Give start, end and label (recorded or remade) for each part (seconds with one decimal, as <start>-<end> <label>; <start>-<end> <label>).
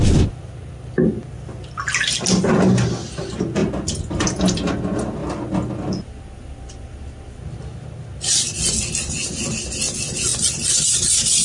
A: 0.0-11.4 recorded